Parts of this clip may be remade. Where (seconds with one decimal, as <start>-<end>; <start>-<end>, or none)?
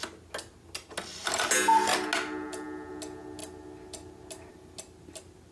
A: none